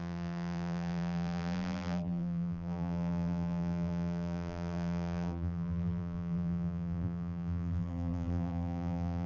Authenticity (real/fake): fake